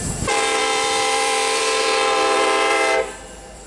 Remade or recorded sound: remade